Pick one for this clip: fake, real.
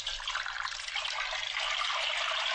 real